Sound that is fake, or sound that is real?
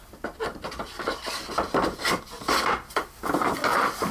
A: real